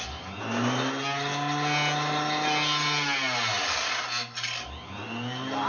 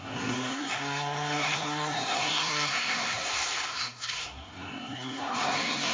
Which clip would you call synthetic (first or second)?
second